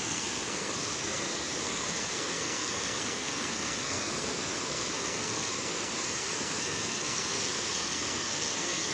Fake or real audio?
fake